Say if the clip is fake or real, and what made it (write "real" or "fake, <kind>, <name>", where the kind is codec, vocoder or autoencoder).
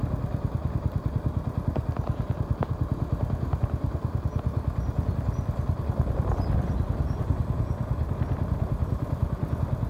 real